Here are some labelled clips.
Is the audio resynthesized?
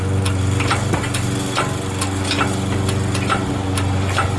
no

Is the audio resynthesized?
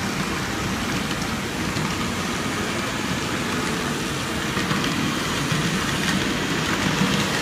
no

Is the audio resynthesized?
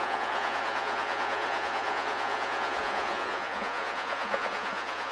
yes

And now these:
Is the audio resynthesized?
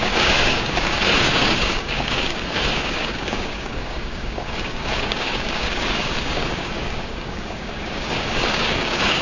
yes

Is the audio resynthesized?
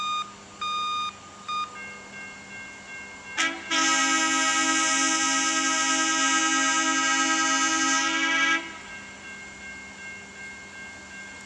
no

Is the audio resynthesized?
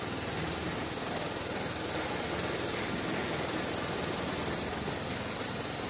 no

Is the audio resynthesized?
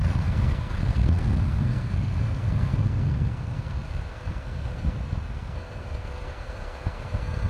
yes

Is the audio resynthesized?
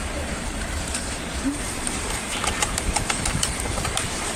yes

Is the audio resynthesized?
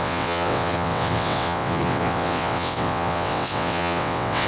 yes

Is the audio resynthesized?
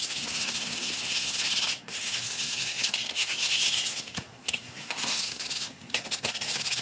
yes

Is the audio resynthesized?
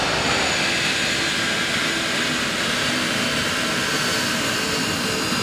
no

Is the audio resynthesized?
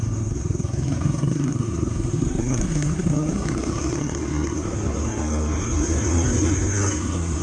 yes